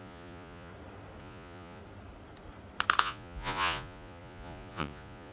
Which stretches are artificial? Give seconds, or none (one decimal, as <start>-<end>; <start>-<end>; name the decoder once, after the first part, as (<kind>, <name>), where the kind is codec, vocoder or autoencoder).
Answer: 0.0-0.7 (vocoder, Vocos); 1.2-1.8; 3.0-5.3